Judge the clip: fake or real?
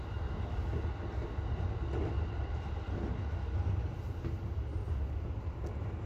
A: real